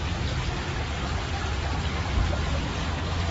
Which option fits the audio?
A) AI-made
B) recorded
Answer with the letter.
B